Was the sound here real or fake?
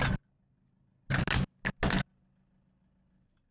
real